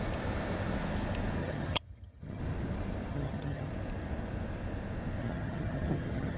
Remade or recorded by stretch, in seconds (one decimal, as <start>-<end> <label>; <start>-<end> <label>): 0.0-1.4 recorded; 1.4-2.4 remade; 2.4-3.1 recorded; 3.1-3.7 remade; 3.7-5.2 recorded; 5.2-6.4 remade